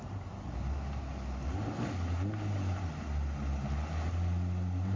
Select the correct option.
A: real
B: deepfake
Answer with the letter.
A